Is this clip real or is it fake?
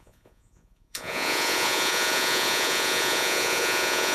fake